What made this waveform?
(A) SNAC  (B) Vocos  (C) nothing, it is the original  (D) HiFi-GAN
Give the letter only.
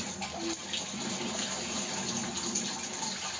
C